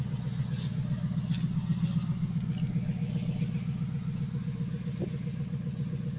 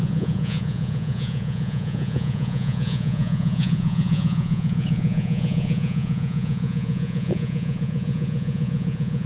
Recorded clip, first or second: first